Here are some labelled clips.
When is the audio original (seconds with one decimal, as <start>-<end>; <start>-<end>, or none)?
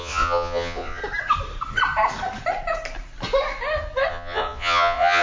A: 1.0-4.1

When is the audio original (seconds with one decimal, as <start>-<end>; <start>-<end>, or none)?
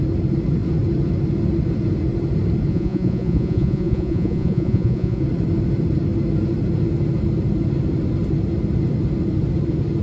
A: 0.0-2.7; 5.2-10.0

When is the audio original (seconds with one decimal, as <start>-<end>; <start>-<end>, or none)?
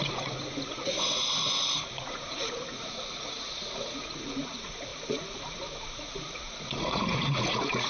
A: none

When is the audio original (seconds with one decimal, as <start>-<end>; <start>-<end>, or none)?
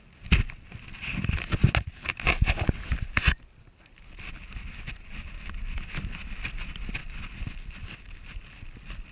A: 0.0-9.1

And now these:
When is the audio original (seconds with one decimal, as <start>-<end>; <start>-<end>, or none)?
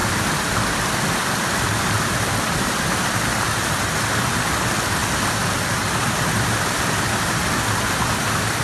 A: 0.0-8.6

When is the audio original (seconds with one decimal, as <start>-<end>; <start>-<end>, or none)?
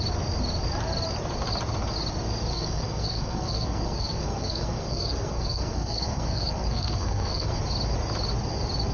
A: 0.0-2.5; 7.6-8.9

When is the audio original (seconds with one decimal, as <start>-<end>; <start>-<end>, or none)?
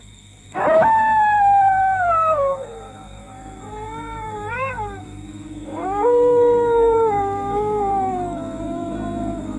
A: 0.6-1.8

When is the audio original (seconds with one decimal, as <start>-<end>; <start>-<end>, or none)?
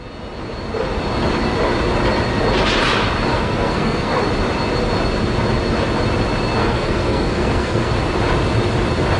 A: 0.0-3.3; 4.2-6.6; 7.9-9.2